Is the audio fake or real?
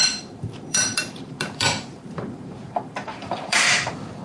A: fake